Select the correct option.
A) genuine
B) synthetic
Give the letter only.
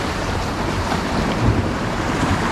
B